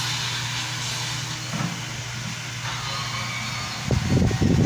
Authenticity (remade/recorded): recorded